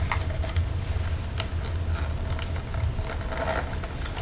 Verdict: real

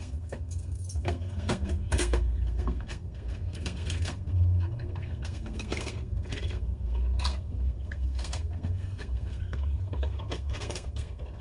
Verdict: fake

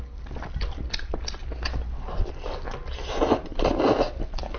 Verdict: real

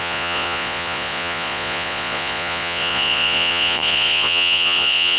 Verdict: fake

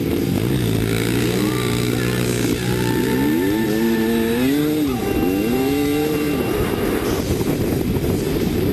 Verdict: real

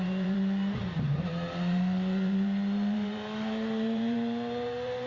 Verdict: fake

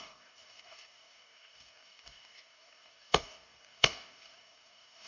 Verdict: fake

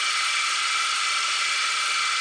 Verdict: real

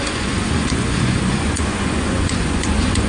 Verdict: fake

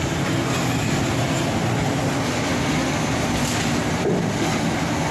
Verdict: real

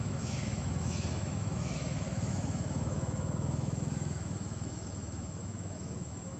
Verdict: fake